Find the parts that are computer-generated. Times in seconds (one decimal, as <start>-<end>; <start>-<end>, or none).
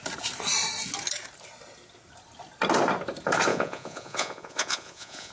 3.5-5.3